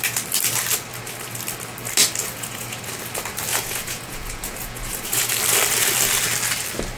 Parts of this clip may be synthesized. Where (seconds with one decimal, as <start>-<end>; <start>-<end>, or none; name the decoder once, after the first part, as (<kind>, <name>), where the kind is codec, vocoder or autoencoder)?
2.2-2.9 (vocoder, Vocos); 3.5-5.3

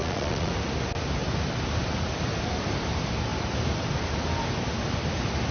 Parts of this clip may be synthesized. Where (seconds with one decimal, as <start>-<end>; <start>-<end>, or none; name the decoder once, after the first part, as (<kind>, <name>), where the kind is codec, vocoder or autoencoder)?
0.0-0.5 (vocoder, Vocos)

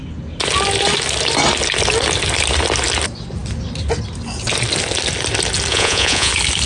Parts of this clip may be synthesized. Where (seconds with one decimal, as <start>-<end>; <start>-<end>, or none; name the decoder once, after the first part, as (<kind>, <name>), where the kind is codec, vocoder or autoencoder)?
5.7-6.3 (vocoder, Vocos)